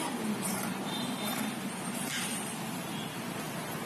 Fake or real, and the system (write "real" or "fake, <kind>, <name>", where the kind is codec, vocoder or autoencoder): real